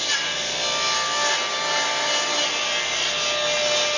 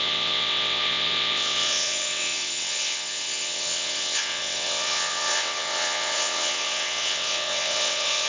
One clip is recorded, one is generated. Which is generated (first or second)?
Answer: second